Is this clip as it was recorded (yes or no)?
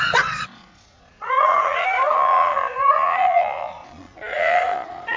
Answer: no